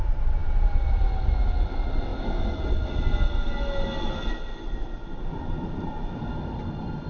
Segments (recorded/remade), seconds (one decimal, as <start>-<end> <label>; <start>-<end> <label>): 0.0-7.1 recorded